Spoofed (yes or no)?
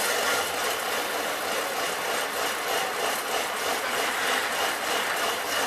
no